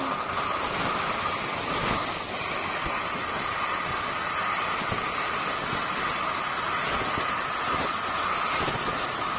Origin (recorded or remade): recorded